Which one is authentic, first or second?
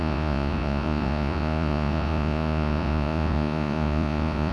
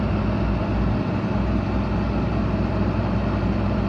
second